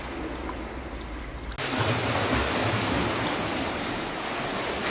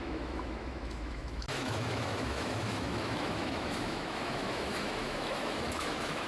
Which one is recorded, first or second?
first